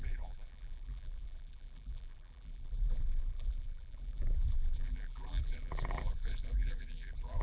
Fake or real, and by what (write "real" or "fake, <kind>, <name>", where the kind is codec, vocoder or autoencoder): fake, vocoder, BigVGAN v2